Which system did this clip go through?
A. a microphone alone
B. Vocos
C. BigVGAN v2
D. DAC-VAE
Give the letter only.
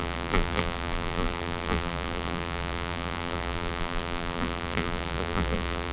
C